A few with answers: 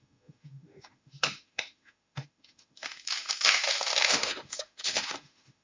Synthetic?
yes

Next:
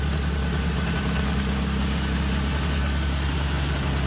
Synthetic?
no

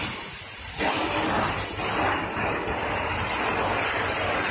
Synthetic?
no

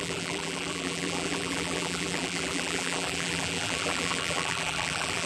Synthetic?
yes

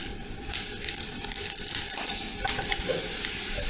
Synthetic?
no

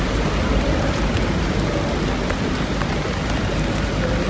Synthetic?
no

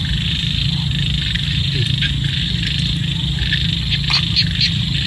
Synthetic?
no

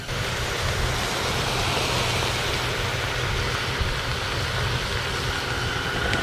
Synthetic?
no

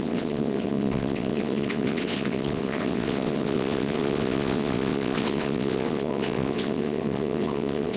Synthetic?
yes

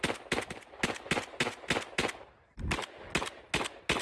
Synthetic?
no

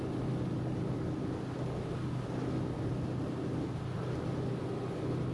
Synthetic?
no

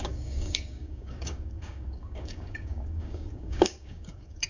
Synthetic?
yes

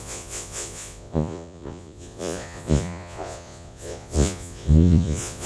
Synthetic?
yes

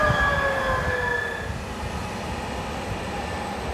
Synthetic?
no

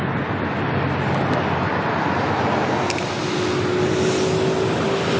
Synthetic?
no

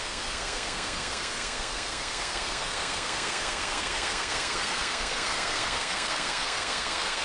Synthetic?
yes